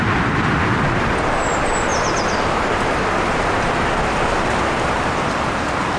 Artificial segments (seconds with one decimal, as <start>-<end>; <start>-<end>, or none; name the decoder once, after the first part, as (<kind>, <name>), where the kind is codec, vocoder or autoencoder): 0.7-1.3 (vocoder, BigVGAN v2); 1.9-5.5